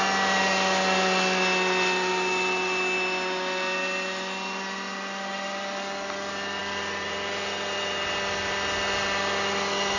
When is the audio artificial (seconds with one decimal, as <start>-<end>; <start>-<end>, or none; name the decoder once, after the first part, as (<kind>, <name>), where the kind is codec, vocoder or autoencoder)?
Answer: none

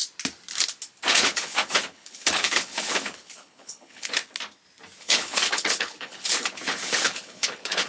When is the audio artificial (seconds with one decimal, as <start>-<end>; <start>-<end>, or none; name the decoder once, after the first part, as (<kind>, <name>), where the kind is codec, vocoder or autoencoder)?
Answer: 1.1-4.2 (codec, HILCodec); 5.0-7.9

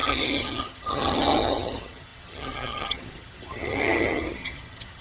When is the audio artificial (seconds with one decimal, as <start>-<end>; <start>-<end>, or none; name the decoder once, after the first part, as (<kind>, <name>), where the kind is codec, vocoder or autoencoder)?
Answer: 0.0-5.0 (vocoder, HiFi-GAN)

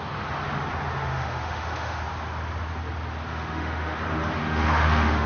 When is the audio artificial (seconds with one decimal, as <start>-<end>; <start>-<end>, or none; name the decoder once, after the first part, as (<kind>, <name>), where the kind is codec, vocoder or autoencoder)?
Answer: 0.9-2.0 (autoencoder, DAC-VAE); 3.3-4.0; 4.4-5.3

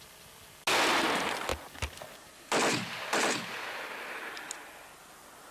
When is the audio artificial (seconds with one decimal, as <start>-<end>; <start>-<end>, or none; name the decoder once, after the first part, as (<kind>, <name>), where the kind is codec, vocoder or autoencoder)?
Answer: none

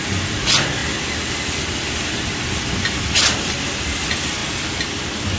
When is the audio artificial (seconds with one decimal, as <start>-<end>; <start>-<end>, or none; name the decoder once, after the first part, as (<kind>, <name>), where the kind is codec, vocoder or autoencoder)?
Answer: none

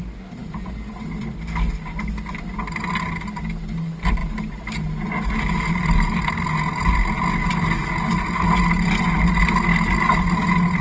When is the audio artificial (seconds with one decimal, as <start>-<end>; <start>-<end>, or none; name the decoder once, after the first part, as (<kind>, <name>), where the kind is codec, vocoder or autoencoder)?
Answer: none

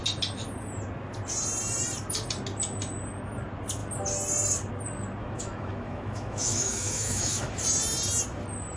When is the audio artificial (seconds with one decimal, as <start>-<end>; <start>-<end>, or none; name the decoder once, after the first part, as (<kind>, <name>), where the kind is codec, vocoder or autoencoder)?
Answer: 5.2-7.5 (autoencoder, DAC-VAE)